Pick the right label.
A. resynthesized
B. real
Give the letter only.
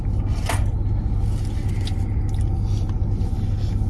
B